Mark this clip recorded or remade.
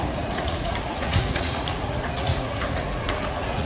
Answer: remade